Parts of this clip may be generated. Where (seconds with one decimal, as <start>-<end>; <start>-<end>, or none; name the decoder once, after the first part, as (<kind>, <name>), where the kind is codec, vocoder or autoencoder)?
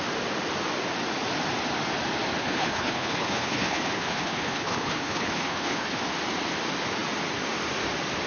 2.4-6.0 (codec, HILCodec)